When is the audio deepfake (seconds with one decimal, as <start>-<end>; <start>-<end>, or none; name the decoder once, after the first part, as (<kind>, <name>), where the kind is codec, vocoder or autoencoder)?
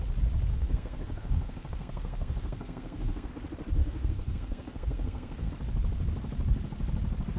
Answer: 0.5-3.3 (codec, SNAC); 3.8-5.5